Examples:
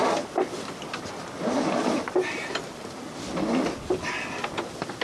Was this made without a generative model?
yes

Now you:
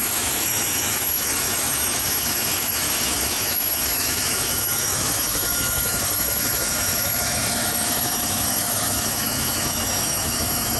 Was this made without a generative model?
no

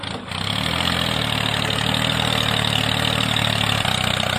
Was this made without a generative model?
yes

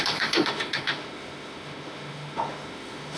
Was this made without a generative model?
no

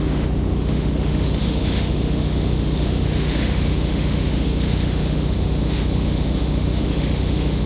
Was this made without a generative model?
no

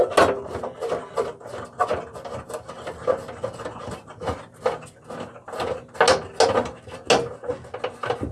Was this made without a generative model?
yes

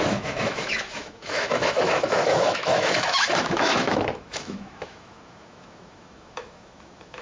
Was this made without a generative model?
no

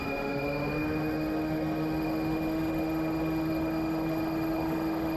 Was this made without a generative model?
no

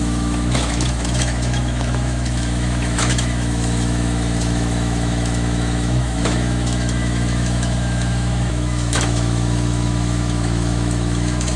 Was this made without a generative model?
no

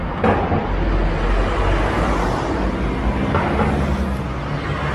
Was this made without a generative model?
yes